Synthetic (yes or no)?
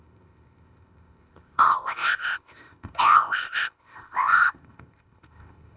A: yes